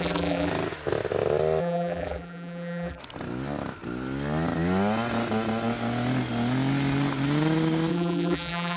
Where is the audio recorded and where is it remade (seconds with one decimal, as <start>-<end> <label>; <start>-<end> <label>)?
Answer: 0.0-0.5 remade; 0.5-1.6 recorded; 1.6-3.0 remade; 3.0-7.9 recorded; 7.9-8.8 remade

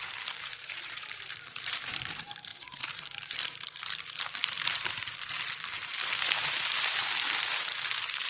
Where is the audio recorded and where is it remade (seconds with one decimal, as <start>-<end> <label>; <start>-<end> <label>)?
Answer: 0.0-8.3 remade